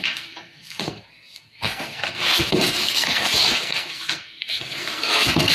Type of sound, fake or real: fake